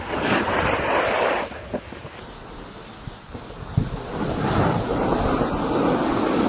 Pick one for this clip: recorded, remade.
recorded